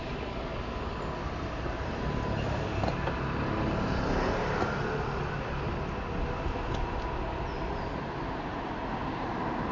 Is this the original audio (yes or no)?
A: yes